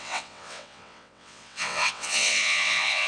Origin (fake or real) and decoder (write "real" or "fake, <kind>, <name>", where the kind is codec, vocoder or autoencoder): fake, vocoder, WaveNeXt